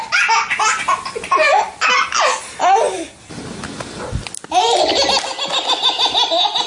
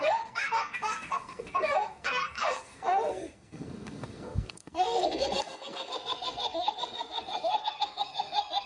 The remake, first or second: second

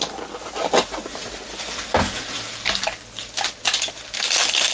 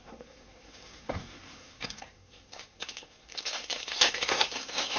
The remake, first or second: second